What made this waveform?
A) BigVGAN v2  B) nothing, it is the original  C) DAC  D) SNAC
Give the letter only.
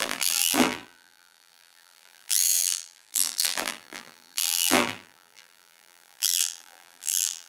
A